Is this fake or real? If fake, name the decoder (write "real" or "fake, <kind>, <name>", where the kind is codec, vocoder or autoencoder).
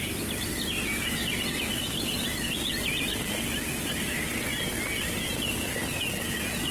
real